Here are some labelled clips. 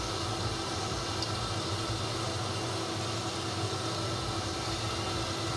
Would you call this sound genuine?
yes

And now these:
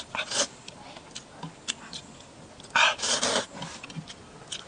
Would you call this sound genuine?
yes